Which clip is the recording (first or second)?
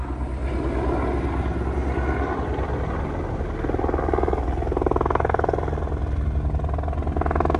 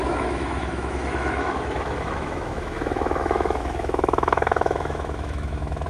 first